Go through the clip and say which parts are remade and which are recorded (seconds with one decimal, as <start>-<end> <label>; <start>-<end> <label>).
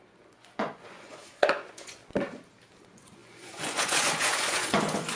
0.0-2.0 remade; 2.0-2.8 recorded; 2.8-5.2 remade